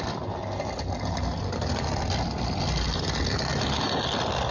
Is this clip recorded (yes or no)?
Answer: yes